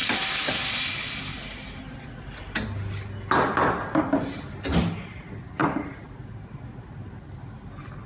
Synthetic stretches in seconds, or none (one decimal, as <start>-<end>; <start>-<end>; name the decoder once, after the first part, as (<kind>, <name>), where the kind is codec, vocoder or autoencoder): none